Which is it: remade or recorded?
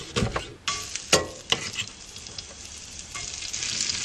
recorded